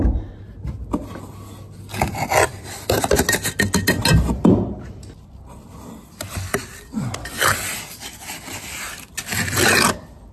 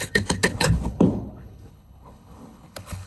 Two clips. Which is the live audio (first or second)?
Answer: first